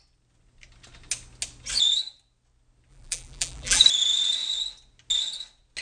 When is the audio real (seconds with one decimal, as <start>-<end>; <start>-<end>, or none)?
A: 0.0-2.9; 3.8-5.8